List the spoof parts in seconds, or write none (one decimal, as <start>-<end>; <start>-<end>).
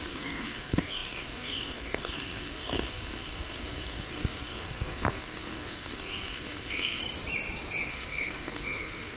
0.0-7.0; 7.9-9.2